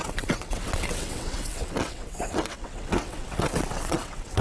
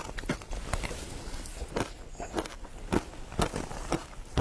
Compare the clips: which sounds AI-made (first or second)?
first